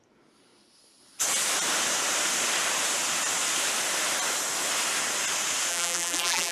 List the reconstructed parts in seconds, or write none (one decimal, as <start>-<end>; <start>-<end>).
5.7-6.5